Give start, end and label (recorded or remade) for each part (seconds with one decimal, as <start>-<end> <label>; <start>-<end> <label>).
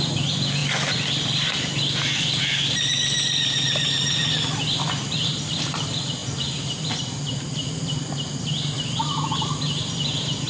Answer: 0.0-10.5 recorded